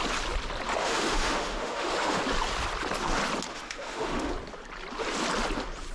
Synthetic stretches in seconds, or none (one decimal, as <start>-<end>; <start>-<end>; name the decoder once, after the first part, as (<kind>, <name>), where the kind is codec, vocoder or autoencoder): 0.8-2.2 (autoencoder, DAC-VAE); 3.5-4.3